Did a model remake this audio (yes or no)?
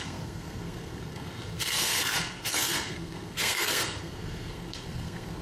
yes